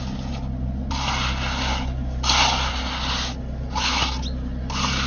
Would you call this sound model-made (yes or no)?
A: no